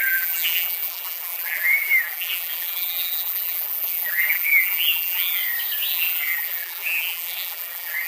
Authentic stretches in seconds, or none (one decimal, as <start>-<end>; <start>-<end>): 5.4-5.9